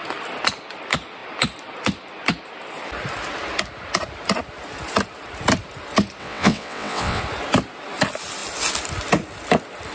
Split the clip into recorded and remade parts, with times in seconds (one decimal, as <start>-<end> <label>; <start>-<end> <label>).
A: 0.0-6.2 recorded; 6.2-7.2 remade; 7.2-9.9 recorded